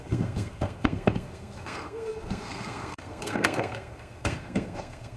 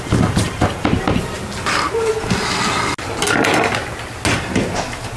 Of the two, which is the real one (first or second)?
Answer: second